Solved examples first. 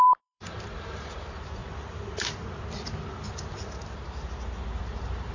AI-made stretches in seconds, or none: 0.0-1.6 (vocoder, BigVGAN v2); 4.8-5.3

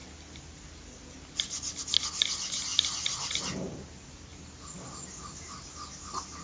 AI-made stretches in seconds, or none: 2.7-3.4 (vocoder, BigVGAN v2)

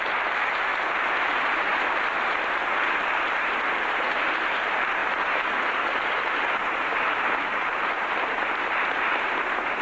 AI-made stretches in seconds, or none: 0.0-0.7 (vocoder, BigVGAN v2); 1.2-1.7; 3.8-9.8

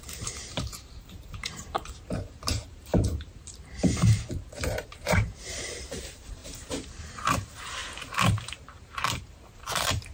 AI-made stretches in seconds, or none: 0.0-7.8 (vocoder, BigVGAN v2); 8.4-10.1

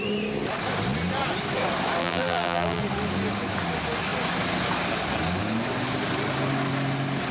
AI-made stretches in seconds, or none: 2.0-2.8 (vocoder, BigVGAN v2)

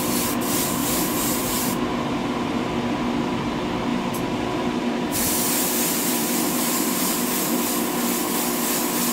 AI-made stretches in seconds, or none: 0.8-2.7 (vocoder, BigVGAN v2); 3.9-7.6

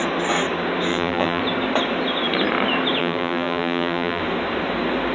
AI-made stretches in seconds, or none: 0.9-1.4 (vocoder, BigVGAN v2); 3.0-4.2

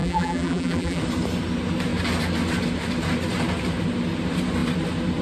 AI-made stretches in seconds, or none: 0.0-1.0 (vocoder, BigVGAN v2)